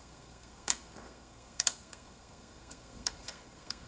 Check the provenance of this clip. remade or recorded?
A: remade